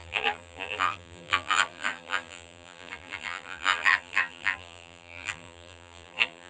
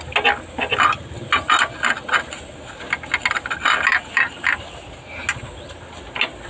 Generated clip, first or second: first